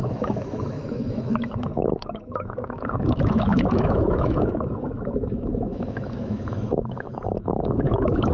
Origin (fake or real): fake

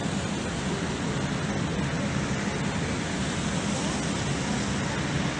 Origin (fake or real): real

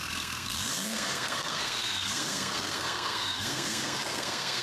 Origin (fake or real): fake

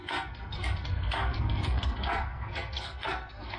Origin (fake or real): fake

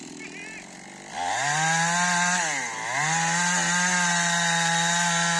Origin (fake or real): real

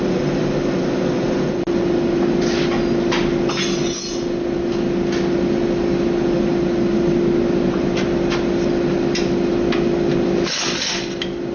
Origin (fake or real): real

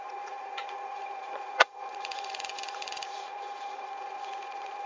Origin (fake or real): fake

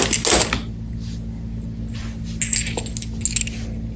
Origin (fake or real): real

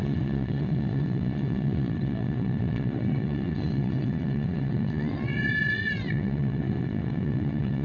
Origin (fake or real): fake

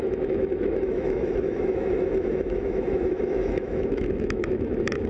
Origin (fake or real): fake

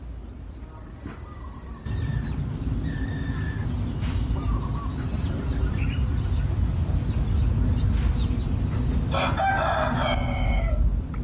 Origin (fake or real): real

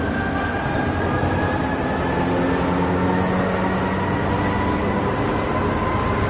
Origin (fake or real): real